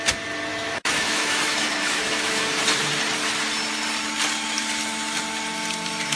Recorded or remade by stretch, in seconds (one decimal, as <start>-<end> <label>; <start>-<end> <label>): 0.0-0.5 recorded; 0.5-2.5 remade; 2.5-6.2 recorded